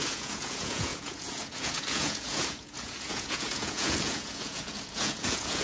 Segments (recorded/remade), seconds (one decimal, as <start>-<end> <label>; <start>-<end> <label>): 0.0-5.6 remade